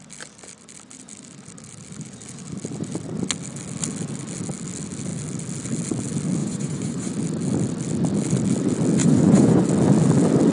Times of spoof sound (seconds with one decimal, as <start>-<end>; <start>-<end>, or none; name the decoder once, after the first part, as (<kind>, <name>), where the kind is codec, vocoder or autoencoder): 6.4-7.1 (vocoder, Vocos); 9.0-9.6